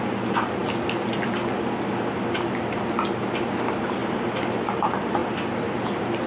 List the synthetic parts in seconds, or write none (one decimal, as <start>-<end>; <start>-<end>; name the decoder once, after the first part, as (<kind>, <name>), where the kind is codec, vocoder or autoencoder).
4.0-4.5 (vocoder, BigVGAN v2); 5.2-6.3